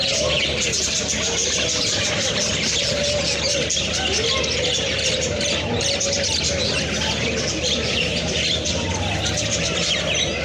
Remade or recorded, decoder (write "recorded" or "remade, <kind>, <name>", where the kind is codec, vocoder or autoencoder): recorded